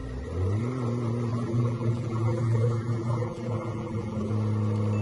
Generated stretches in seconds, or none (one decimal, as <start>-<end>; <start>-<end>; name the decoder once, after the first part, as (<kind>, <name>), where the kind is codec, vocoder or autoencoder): 1.3-4.3 (vocoder, BigVGAN v2)

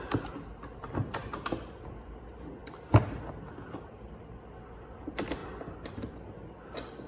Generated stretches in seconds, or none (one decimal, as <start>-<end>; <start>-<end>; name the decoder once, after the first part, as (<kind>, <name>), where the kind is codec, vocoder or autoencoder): 5.4-6.1 (vocoder, BigVGAN v2)

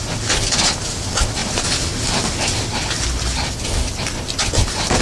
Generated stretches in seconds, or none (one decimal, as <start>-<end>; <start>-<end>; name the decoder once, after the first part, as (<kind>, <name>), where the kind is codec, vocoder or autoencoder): none

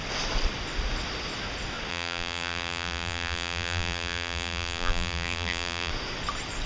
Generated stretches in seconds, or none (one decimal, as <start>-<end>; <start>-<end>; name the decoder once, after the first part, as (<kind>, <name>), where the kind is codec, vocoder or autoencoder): 1.9-5.9 (vocoder, BigVGAN v2)

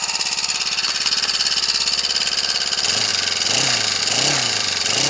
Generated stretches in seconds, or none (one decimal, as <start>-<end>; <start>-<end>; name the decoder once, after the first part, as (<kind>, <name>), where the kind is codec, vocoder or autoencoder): 2.2-3.1 (vocoder, BigVGAN v2); 4.0-5.1

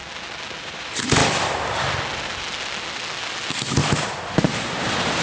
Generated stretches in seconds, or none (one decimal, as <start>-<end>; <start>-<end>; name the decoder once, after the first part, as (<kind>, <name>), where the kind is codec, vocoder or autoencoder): 0.6-1.2 (vocoder, BigVGAN v2); 4.3-5.2

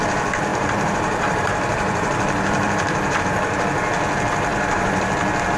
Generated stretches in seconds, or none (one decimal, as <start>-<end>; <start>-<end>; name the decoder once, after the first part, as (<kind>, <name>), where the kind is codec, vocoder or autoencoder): 0.5-3.2 (vocoder, BigVGAN v2); 4.5-5.1

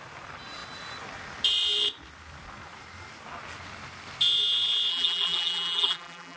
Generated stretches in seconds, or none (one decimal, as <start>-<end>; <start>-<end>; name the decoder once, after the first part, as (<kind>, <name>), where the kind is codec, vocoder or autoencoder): 4.9-6.4 (vocoder, BigVGAN v2)